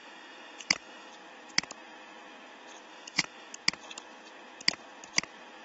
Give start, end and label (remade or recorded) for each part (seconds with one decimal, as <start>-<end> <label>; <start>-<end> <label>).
0.0-1.1 remade; 1.1-2.9 recorded; 2.9-3.5 remade; 3.5-5.6 recorded